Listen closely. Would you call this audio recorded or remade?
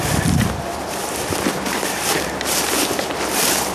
remade